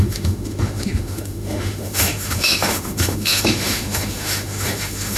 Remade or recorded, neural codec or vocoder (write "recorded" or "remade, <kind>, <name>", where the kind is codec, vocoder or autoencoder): remade, autoencoder, DAC-VAE